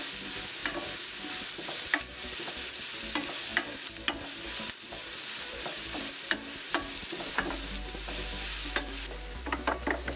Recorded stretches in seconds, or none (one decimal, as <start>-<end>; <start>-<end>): 0.0-3.5; 7.3-10.2